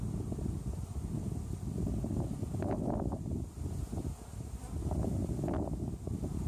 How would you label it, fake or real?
real